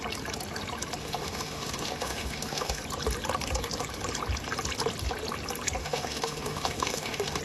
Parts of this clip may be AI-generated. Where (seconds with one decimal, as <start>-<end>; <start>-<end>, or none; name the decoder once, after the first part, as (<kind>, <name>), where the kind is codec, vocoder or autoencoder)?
1.0-2.8 (autoencoder, DAC-VAE); 5.8-7.4